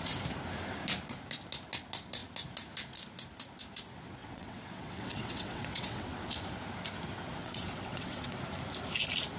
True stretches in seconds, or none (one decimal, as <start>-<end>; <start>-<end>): 0.0-4.2; 6.3-7.4; 8.4-9.4